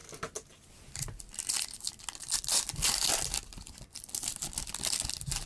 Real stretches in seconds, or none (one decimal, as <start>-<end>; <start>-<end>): 0.0-3.5; 4.1-5.5